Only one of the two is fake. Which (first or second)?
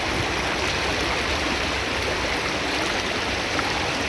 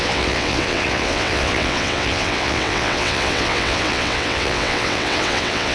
second